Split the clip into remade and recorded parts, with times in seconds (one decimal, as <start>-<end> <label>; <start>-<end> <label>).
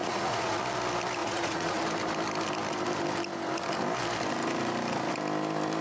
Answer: 0.0-0.6 remade; 0.6-1.2 recorded; 1.2-1.8 remade; 1.8-5.8 recorded